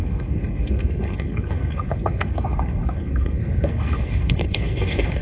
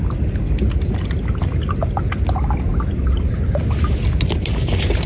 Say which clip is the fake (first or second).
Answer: first